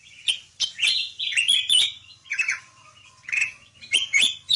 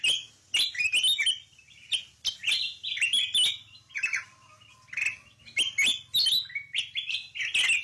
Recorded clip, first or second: second